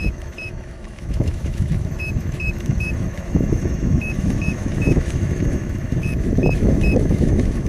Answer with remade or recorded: remade